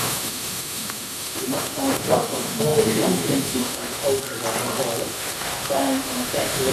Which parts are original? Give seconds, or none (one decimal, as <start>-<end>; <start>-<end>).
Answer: 4.2-5.0